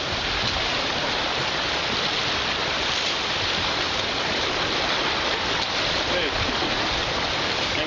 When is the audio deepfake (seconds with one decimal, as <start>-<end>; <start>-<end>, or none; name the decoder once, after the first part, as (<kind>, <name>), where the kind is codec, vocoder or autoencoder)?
1.0-5.7 (vocoder, BigVGAN v2)